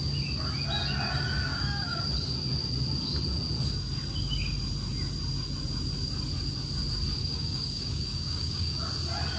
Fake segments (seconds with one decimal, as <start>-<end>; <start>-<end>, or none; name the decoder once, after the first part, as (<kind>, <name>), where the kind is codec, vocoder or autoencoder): 1.5-2.0 (codec, DAC); 7.2-8.8